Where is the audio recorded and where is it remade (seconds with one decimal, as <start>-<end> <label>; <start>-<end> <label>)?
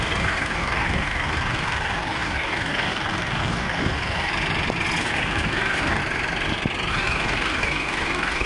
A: 0.0-4.3 remade; 4.3-5.0 recorded; 5.0-6.0 remade; 6.0-6.9 recorded; 6.9-8.5 remade